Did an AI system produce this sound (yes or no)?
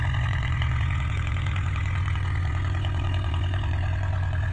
yes